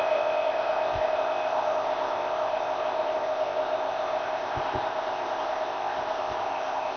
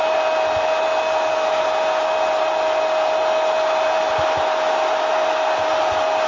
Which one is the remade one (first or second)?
first